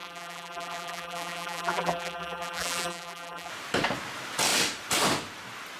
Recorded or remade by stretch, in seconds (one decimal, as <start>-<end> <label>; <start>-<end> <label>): 0.0-3.5 remade; 3.5-5.8 recorded